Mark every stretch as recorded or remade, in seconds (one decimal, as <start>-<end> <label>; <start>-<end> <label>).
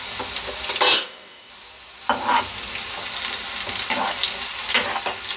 0.0-0.9 recorded; 0.9-1.5 remade; 1.5-5.4 recorded